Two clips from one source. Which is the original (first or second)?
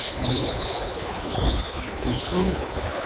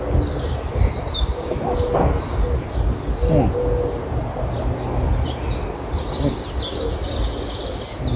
second